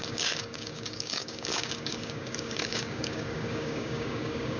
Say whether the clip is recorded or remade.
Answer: remade